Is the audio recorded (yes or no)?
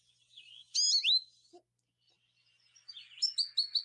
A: yes